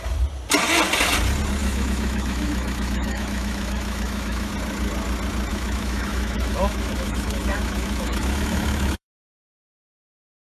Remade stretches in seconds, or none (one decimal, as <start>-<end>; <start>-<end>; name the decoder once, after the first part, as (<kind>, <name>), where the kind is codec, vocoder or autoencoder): 1.6-4.5 (autoencoder, DAC-VAE); 5.5-9.5

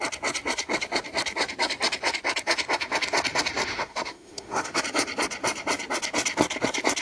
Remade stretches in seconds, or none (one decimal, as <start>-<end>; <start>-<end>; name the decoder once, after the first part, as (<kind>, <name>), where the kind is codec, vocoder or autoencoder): 3.7-4.8 (autoencoder, DAC-VAE)

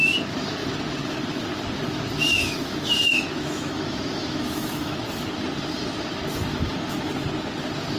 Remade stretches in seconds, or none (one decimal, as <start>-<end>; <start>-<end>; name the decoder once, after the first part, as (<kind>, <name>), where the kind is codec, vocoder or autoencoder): 2.4-5.0 (autoencoder, DAC-VAE); 6.5-7.1

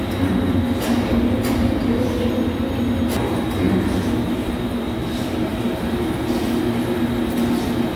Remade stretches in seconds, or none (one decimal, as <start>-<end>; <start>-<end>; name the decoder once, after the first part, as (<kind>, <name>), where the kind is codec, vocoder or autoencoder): none

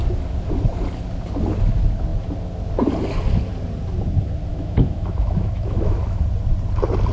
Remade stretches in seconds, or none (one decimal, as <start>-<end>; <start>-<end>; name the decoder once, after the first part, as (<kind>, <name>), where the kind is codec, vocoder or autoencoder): 4.5-6.2 (autoencoder, DAC-VAE)

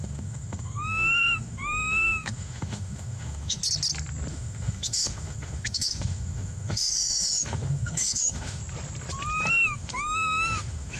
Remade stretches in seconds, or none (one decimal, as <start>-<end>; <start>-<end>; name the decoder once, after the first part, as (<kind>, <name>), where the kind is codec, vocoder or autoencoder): 0.0-3.6 (autoencoder, DAC-VAE); 4.3-8.6; 9.5-11.0